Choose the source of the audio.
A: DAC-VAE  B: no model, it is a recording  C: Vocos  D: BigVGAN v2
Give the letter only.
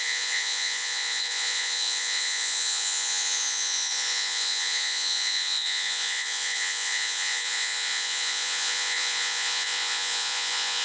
C